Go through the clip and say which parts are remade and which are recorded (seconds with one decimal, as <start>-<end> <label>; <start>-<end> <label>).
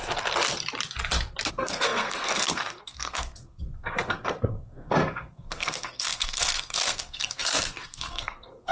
0.0-1.5 recorded; 1.5-8.7 remade